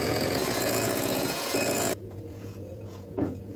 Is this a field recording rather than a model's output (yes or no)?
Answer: no